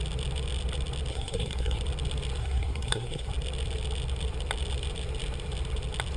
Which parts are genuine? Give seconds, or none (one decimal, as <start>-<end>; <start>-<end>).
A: 0.0-1.1; 1.8-2.4; 3.3-6.2